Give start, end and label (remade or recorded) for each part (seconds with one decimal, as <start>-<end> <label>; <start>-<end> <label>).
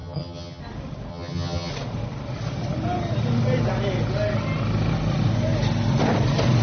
0.0-0.6 remade; 0.6-1.1 recorded; 1.1-1.7 remade; 1.7-6.6 recorded